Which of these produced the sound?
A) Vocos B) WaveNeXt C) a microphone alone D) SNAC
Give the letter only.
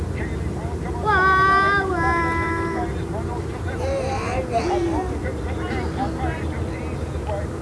C